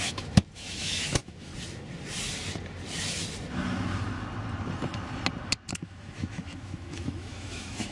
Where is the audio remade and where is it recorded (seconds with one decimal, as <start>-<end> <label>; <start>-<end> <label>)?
0.0-1.5 remade; 1.5-5.7 recorded; 5.7-7.9 remade